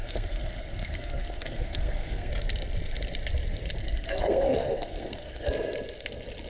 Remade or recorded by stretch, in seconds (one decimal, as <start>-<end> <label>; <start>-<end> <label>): 0.0-2.3 remade; 2.3-3.8 recorded; 3.8-5.5 remade; 5.5-6.5 recorded